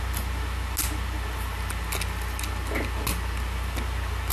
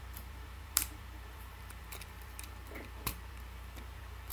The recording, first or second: first